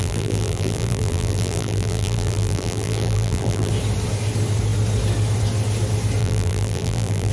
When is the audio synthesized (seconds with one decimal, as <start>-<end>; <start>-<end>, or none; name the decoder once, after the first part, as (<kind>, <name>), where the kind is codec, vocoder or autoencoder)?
0.0-3.7 (vocoder, BigVGAN v2); 6.2-7.3